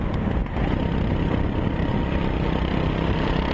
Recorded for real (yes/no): yes